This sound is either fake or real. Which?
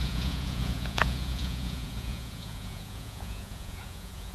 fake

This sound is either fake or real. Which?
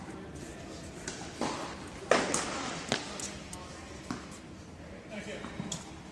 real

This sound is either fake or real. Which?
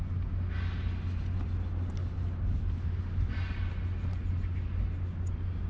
real